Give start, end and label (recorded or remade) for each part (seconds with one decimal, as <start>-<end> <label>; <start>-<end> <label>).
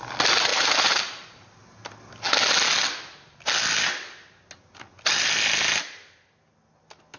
0.0-0.5 recorded; 0.5-1.9 remade; 1.9-7.2 recorded